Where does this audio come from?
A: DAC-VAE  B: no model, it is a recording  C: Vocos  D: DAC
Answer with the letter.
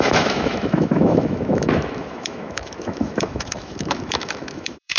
A